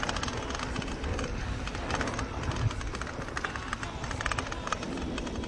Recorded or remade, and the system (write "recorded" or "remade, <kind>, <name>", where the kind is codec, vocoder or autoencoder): recorded